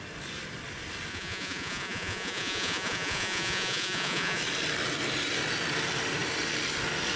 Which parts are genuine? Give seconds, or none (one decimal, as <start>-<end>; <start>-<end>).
0.0-1.1; 4.4-7.2